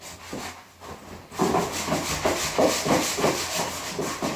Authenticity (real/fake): real